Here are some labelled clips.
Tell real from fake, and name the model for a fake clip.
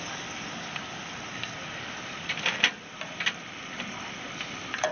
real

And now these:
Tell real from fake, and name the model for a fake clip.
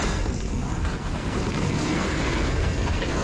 fake, codec, SNAC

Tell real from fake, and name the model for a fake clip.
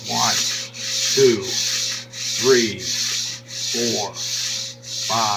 real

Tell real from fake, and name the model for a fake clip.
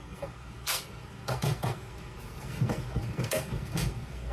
fake, codec, SNAC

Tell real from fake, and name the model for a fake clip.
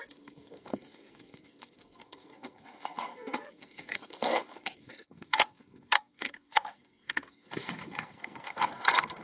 fake, codec, SNAC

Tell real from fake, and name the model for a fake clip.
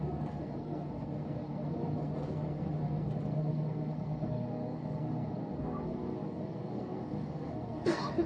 fake, codec, SNAC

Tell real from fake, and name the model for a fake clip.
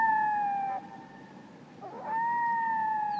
real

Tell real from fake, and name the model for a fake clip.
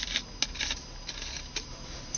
real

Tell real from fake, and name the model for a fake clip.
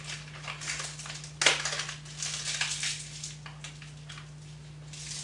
real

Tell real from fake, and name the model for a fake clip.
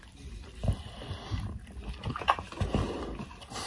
real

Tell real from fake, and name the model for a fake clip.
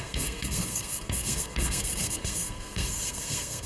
fake, codec, SNAC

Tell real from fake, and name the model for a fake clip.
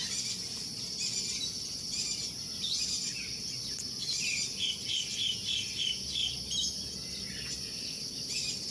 real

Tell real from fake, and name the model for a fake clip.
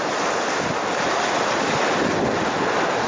real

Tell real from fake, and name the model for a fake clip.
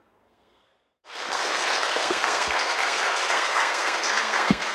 fake, codec, SNAC